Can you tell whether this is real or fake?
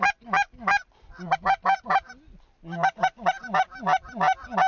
real